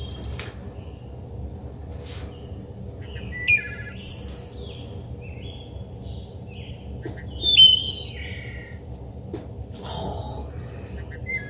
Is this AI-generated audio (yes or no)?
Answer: no